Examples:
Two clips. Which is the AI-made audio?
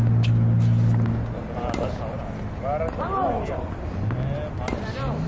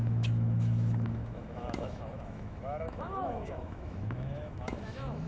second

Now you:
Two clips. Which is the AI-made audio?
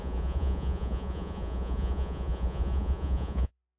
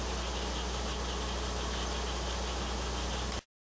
first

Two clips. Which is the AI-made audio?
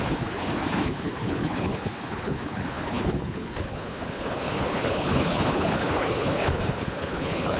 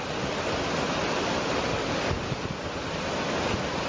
first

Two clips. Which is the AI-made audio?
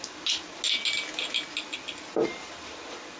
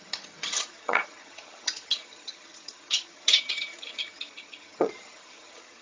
second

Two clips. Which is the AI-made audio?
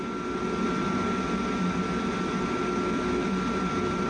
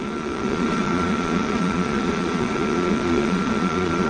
second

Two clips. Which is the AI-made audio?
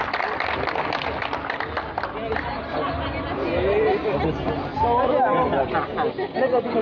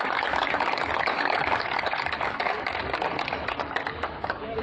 second